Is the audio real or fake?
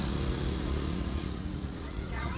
fake